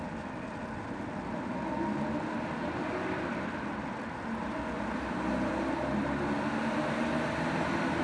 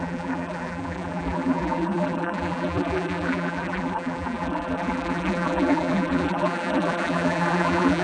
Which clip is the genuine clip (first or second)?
first